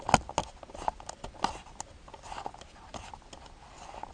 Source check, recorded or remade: recorded